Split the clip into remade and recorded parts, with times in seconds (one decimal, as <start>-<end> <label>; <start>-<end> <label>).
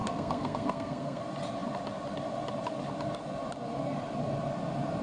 0.0-1.2 remade; 1.2-5.0 recorded